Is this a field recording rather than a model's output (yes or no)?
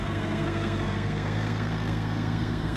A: no